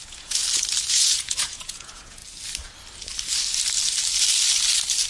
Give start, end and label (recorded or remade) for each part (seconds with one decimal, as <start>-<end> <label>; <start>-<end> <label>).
0.0-0.4 remade; 0.4-0.9 recorded; 0.9-2.2 remade; 2.2-5.1 recorded